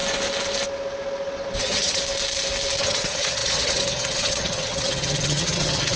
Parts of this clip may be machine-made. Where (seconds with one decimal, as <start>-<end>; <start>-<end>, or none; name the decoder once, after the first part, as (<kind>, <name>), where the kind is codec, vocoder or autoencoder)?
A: 1.6-2.0 (vocoder, HiFi-GAN); 2.8-6.0